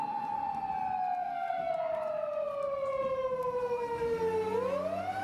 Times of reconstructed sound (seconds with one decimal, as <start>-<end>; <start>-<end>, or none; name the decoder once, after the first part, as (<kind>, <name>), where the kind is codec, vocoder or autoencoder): 1.2-1.7 (codec, SNAC)